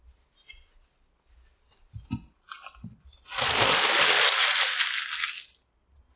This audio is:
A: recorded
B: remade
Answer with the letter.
A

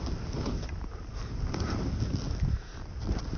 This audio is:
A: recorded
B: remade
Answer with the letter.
A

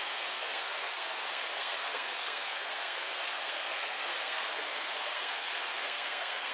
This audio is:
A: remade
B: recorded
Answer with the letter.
A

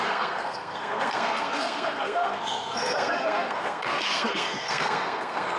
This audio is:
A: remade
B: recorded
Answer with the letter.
A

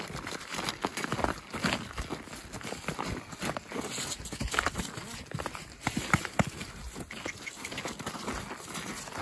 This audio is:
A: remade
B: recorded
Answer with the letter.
B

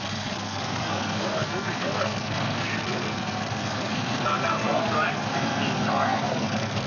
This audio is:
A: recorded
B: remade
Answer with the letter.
B